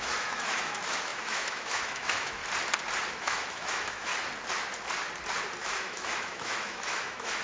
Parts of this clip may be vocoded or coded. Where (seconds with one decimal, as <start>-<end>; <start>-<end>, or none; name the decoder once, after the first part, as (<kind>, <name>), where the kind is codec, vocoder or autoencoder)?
0.0-2.4 (autoencoder, DAC-VAE); 3.1-4.1; 5.6-7.4